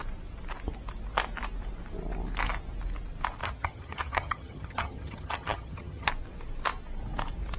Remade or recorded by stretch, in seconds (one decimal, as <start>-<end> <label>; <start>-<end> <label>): 0.0-3.4 recorded; 3.4-6.1 remade; 6.1-7.6 recorded